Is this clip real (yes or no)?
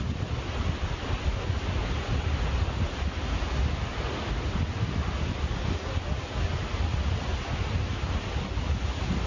yes